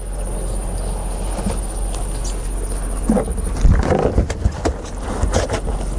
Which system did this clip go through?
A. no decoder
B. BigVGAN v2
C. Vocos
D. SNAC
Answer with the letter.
A